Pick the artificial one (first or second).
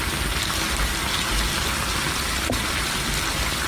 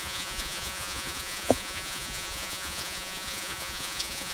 second